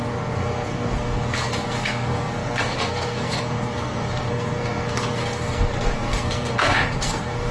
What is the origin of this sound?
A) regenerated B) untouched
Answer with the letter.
A